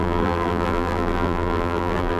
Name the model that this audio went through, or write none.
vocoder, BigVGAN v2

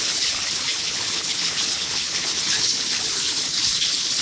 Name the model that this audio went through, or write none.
codec, HILCodec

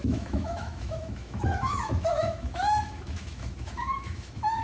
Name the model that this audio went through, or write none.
autoencoder, DAC-VAE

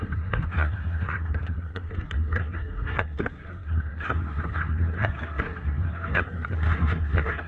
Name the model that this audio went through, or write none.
codec, SNAC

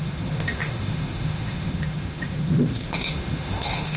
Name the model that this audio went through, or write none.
autoencoder, DAC-VAE